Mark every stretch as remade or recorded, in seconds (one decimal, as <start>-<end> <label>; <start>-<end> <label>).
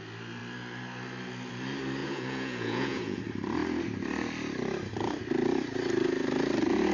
0.0-2.0 recorded; 2.0-3.2 remade; 3.2-6.9 recorded